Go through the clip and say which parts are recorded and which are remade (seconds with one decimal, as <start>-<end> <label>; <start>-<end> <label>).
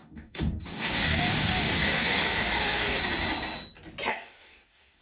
0.0-3.0 remade; 3.0-4.1 recorded; 4.1-5.0 remade